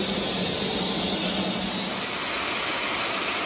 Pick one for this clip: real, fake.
real